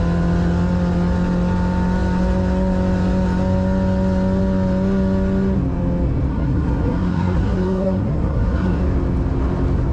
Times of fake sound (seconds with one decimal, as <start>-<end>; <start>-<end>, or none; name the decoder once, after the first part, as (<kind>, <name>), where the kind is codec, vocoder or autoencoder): 6.3-8.8 (codec, SNAC)

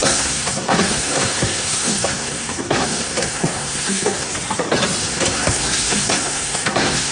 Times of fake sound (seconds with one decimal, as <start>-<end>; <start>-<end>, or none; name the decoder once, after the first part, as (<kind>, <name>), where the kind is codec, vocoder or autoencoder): 0.0-4.3 (codec, SNAC); 5.0-7.1

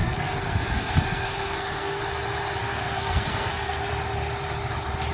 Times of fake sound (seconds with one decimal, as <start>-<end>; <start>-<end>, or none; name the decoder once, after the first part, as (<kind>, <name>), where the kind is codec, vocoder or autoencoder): 0.0-2.0 (codec, SNAC); 2.6-3.9

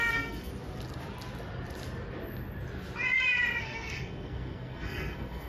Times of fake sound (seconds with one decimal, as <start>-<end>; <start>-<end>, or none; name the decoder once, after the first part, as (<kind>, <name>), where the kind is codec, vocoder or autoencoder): 0.0-0.5 (codec, SNAC); 3.6-5.5

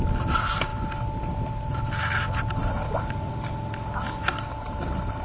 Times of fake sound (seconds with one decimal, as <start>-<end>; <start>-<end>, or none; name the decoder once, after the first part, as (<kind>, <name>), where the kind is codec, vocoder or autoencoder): none

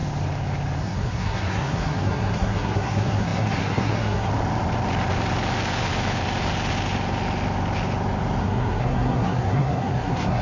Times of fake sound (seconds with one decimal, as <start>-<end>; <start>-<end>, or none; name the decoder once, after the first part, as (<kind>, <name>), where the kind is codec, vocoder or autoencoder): 0.8-4.3 (codec, SNAC); 8.4-10.4

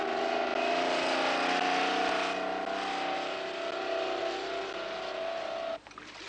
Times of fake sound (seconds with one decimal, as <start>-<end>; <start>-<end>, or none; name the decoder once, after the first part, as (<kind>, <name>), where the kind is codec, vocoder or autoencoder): none